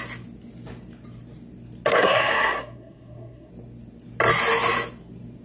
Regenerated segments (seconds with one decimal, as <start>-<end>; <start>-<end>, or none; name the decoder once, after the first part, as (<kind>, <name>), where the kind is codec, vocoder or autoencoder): 1.9-3.5 (codec, SNAC)